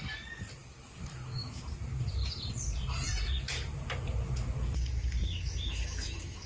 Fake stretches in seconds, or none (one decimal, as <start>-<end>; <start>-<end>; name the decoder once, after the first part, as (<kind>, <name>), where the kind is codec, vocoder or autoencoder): 0.6-1.6 (autoencoder, DAC-VAE); 5.2-6.5